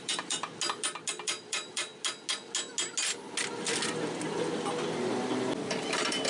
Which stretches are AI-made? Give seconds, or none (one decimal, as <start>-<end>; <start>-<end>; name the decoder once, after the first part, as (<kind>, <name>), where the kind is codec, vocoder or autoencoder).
0.0-0.5 (vocoder, BigVGAN v2); 1.1-1.9; 5.7-6.3